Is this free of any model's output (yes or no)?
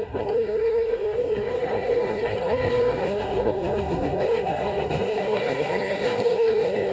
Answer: no